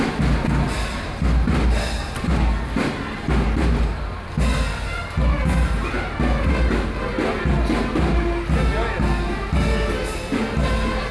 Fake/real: real